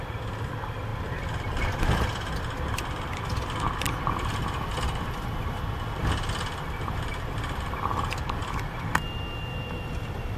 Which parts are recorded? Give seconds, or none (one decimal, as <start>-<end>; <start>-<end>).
0.0-10.4